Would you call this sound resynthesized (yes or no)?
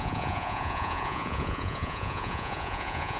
yes